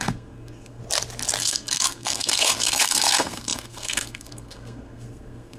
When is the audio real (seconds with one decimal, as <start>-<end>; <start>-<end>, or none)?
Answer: 0.8-1.4